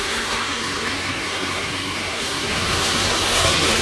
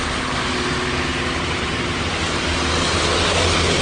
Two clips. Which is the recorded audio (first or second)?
second